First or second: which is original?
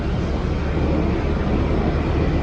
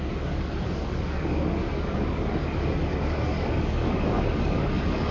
first